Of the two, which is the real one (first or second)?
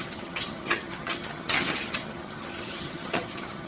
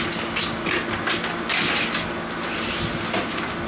second